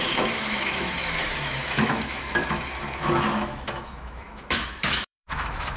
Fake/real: fake